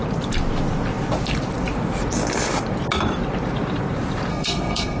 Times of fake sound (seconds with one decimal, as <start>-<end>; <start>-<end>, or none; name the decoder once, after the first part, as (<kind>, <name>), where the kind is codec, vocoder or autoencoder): 4.3-5.0 (codec, SNAC)